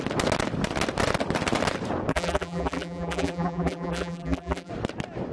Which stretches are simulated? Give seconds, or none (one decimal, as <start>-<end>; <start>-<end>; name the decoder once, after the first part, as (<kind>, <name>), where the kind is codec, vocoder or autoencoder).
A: 2.1-4.7 (vocoder, BigVGAN v2)